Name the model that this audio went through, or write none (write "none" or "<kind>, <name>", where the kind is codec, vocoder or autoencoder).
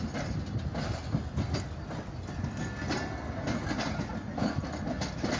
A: none